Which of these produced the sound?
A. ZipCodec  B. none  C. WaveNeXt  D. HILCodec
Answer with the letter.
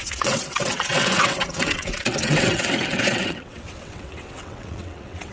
C